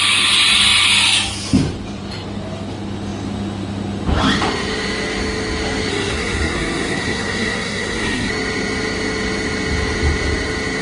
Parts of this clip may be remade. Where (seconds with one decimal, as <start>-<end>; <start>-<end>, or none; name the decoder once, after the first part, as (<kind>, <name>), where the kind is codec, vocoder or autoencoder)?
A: 5.9-8.3 (codec, SNAC)